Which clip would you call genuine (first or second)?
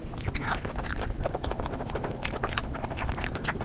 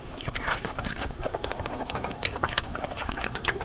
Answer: first